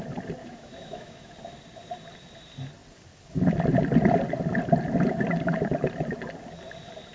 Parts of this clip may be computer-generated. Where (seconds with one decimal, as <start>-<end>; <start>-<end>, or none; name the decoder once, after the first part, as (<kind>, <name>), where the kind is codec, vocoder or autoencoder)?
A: 0.4-1.3 (autoencoder, DAC-VAE)